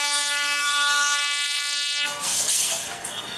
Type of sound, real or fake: fake